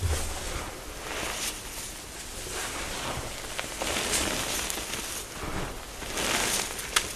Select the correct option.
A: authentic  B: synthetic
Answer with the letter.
A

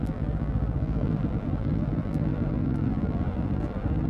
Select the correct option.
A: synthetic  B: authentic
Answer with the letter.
A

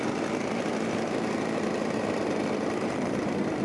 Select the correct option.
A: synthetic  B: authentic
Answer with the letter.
A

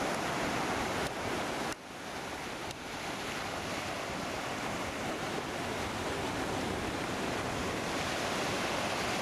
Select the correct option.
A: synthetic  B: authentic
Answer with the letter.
B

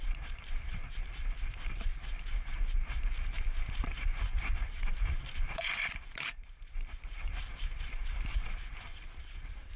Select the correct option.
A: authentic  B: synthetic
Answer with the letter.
B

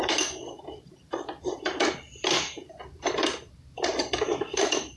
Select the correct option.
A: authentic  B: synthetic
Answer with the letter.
B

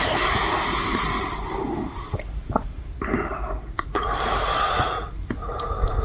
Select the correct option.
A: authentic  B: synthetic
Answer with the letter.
B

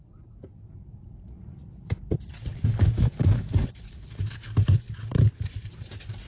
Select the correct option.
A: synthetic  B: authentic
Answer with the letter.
A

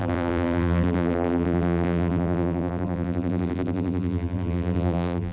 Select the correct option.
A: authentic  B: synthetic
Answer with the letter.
B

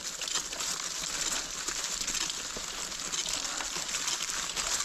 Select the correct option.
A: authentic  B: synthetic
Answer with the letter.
A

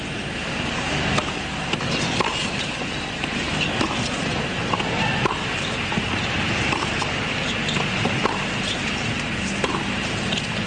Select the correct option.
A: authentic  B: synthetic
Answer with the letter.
B